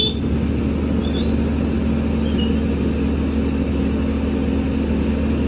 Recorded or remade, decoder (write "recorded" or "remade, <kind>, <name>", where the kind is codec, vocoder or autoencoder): recorded